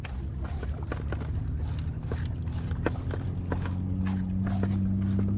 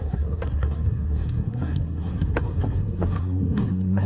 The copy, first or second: second